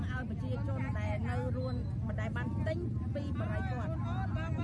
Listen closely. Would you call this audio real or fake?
real